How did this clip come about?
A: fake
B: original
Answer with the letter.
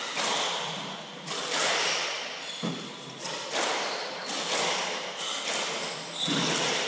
B